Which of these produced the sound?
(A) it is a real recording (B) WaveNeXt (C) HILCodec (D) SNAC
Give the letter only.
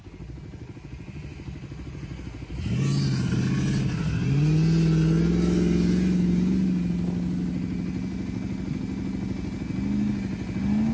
A